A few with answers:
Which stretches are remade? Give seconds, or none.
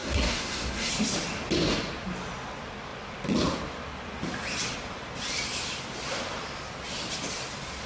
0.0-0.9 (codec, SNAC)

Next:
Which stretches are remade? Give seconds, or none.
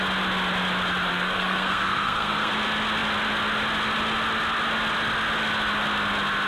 1.1-2.5 (codec, SNAC)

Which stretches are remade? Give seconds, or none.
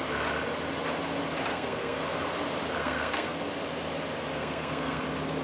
1.5-2.0 (codec, SNAC); 2.8-3.4; 4.3-5.0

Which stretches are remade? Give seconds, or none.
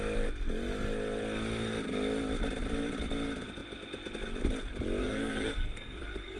5.0-6.4 (codec, SNAC)